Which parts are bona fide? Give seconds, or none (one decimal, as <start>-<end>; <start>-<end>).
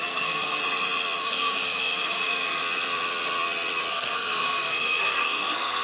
0.6-1.2; 2.6-3.9